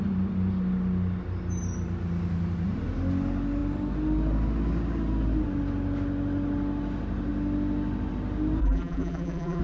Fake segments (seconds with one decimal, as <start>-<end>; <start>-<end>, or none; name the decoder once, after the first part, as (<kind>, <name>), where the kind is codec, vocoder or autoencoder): 8.6-9.6 (vocoder, BigVGAN v2)